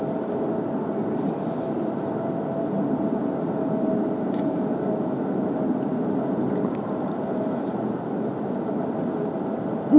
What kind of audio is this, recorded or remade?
recorded